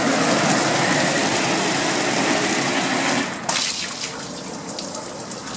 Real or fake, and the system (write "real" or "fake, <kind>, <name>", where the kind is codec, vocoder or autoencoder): real